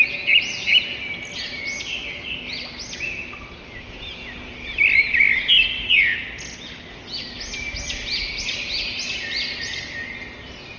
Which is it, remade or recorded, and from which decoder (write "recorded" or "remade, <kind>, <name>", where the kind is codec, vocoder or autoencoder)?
recorded